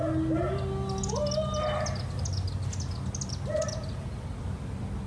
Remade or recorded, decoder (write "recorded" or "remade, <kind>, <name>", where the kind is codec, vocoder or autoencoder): recorded